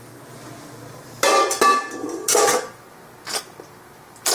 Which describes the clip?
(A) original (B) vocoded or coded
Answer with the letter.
A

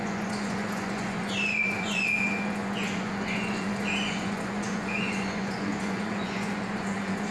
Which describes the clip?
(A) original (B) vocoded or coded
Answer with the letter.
B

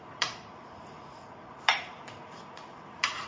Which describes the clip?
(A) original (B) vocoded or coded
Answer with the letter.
B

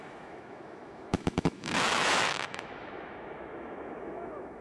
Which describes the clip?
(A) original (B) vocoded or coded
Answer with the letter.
B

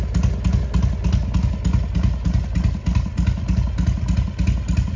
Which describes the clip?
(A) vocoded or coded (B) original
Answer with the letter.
B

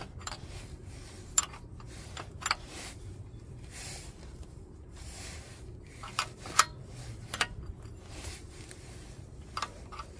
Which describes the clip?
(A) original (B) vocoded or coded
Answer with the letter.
B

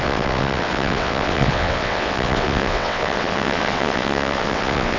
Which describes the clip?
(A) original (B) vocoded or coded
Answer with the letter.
B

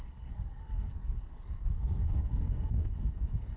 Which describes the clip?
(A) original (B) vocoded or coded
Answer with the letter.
B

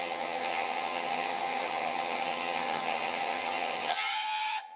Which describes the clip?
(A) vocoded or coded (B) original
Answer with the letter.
A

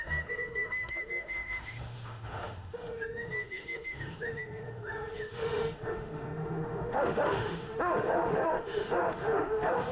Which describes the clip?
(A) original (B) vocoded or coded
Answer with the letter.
B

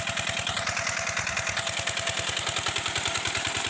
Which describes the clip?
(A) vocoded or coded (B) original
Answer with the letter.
B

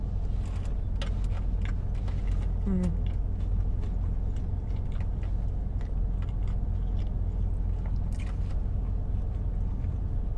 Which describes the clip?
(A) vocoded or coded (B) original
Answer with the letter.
B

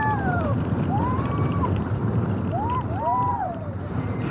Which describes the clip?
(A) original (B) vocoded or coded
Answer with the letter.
B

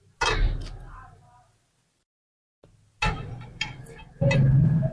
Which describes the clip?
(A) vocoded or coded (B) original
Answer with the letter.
B